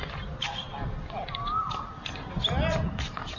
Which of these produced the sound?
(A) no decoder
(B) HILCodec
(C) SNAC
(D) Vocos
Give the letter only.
A